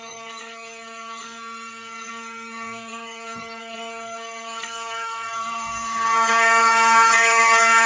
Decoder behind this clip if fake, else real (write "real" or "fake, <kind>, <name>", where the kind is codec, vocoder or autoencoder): fake, codec, SNAC